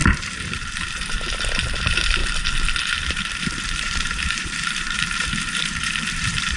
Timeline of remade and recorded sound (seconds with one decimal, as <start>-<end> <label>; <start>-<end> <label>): 0.0-2.2 remade; 2.2-2.8 recorded; 2.8-6.6 remade